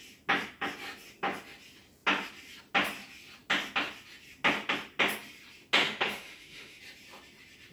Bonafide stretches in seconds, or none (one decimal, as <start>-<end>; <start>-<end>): 0.0-5.8; 6.8-7.7